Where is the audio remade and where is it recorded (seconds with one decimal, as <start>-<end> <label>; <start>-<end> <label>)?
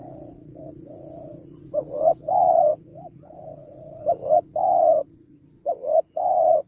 0.0-6.7 remade